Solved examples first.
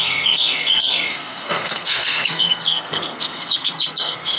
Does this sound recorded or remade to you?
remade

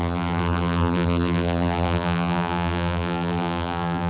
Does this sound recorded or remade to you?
remade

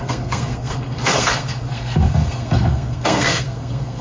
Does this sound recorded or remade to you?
remade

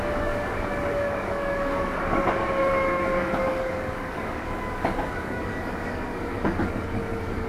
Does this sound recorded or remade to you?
remade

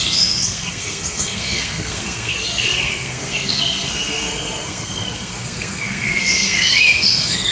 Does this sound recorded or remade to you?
remade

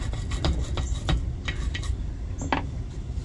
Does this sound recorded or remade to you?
recorded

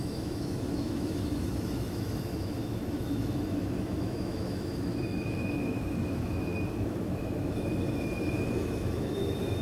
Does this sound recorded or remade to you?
remade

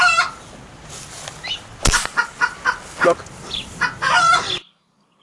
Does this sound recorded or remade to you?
recorded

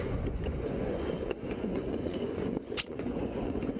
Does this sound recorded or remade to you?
remade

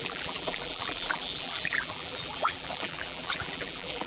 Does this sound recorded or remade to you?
remade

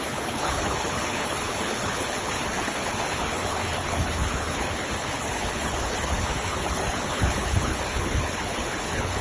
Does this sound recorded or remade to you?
remade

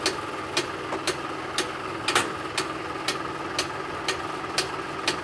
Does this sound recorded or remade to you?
recorded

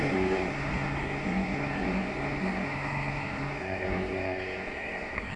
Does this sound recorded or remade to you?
remade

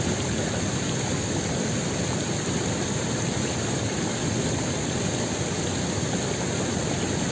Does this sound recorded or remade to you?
recorded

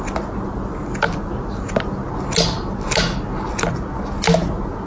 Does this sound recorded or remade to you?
recorded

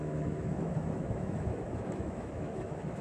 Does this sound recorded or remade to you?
remade